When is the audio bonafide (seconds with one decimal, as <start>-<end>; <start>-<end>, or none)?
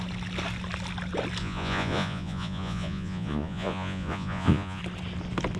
0.0-1.4; 4.8-5.6